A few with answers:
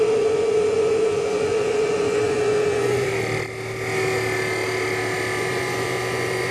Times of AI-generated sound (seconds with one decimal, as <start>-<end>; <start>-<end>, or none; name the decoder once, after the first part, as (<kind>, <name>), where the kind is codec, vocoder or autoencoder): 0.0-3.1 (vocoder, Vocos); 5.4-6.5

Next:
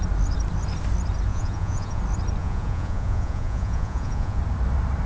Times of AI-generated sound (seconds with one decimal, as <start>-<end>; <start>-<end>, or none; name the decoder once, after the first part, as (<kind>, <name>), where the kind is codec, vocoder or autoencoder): 1.3-2.0 (vocoder, Vocos); 2.4-4.4

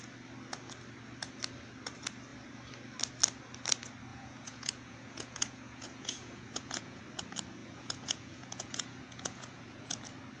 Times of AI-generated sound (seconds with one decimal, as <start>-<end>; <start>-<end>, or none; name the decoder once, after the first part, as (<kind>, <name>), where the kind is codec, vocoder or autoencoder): 4.1-7.0 (vocoder, Vocos); 7.6-10.0